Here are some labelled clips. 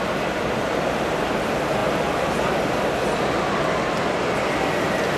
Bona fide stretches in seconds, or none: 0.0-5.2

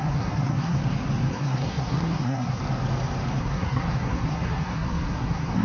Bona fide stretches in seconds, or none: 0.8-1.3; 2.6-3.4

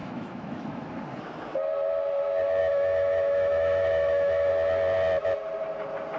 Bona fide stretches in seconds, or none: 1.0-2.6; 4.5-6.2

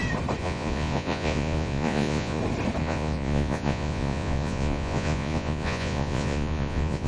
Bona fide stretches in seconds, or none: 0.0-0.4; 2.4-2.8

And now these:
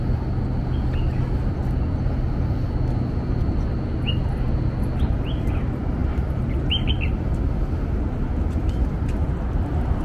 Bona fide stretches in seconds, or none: 0.0-10.0

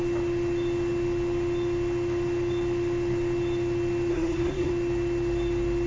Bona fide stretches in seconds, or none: 0.0-4.1; 4.7-5.9

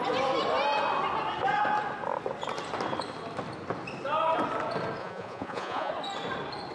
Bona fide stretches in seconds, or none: 0.0-5.0; 5.9-6.7